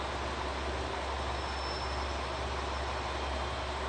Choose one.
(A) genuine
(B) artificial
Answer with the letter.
A